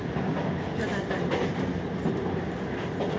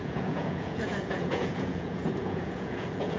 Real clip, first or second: first